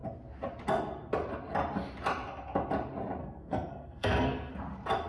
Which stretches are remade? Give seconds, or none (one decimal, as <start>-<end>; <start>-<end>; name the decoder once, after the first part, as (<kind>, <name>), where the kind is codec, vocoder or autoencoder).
3.2-4.5 (codec, SNAC)